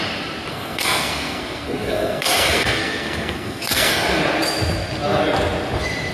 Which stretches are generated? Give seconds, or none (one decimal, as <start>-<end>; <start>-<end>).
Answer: 0.5-4.2